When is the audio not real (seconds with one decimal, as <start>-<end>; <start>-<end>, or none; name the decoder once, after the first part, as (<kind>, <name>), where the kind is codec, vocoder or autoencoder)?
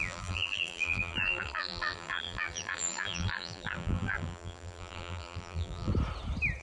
0.0-5.9 (vocoder, BigVGAN v2)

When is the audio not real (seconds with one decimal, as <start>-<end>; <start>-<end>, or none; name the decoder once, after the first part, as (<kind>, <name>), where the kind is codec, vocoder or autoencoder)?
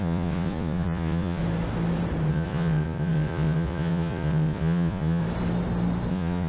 0.0-1.4 (vocoder, Vocos); 2.3-5.2; 6.1-6.5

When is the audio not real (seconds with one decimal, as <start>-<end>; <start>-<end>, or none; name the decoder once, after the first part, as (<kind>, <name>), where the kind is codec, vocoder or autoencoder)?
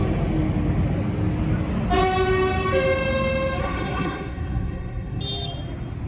3.6-5.2 (codec, SNAC)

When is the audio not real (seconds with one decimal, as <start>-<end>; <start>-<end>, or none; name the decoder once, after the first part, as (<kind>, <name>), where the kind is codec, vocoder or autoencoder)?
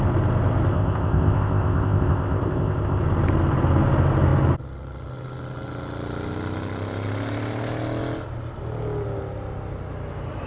0.7-3.0 (codec, ZipCodec)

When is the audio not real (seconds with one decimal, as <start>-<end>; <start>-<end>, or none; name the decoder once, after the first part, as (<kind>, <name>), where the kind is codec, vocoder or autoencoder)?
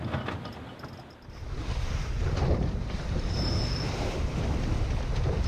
1.6-4.4 (vocoder, BigVGAN v2)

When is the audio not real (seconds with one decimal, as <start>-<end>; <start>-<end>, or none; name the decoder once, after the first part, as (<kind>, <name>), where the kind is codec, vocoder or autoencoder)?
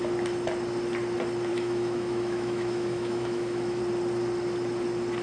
1.5-3.8 (autoencoder, DAC-VAE)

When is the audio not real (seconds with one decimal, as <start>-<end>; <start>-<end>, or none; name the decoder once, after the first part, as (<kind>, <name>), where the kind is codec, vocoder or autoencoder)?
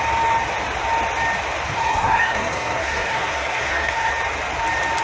1.8-4.1 (codec, SNAC)